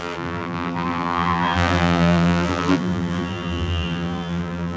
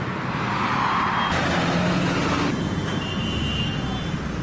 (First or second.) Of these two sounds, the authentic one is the second